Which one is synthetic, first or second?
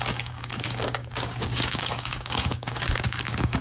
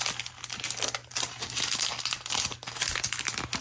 first